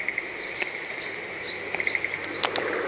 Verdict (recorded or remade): recorded